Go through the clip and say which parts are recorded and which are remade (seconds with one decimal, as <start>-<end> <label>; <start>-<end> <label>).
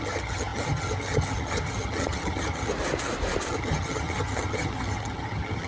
0.0-2.7 remade; 2.7-3.5 recorded; 3.5-5.7 remade